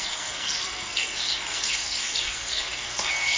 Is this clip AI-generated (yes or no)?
yes